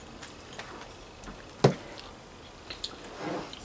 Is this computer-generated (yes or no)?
no